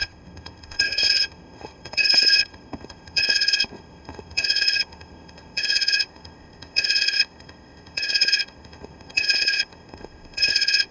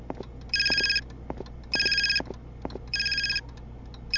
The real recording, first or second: second